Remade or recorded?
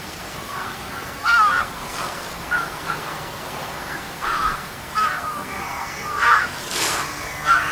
remade